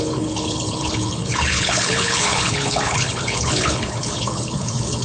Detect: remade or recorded remade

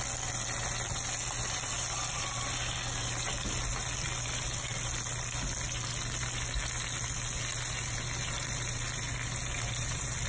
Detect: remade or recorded recorded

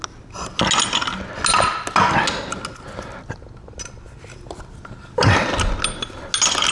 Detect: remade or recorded recorded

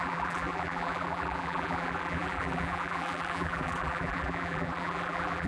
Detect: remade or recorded remade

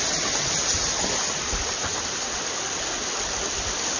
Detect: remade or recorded recorded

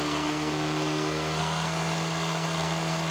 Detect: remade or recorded remade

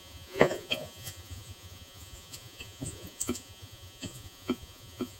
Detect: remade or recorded remade